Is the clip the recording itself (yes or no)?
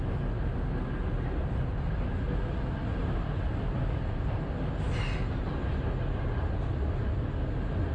yes